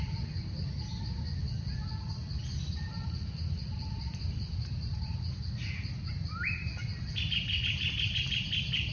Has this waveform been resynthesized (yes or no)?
no